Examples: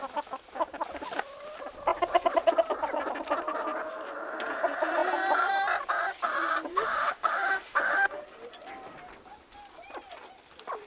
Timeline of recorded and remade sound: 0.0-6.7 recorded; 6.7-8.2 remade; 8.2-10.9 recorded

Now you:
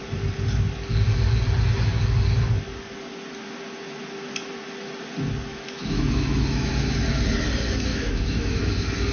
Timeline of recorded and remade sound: 0.0-5.5 recorded; 5.5-6.7 remade; 6.7-7.9 recorded; 7.9-8.6 remade; 8.6-9.1 recorded

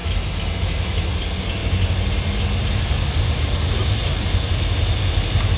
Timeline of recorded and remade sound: 0.0-1.1 remade; 1.1-5.6 recorded

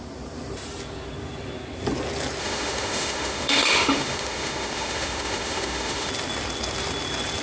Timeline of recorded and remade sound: 0.0-2.4 recorded; 2.4-6.1 remade; 6.1-7.4 recorded

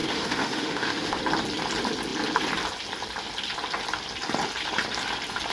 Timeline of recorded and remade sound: 0.0-1.2 remade; 1.2-5.5 recorded

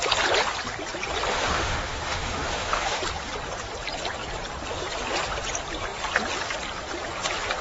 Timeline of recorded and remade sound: 0.0-1.3 recorded; 1.3-3.0 remade; 3.0-7.6 recorded